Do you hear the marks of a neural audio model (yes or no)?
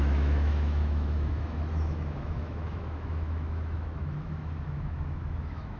yes